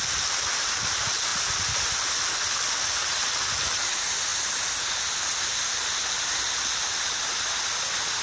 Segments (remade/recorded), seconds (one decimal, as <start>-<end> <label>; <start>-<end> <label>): 0.0-8.2 recorded